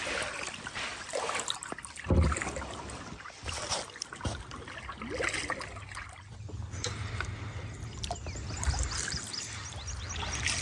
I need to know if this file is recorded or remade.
recorded